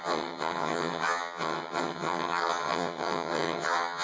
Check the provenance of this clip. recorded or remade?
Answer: remade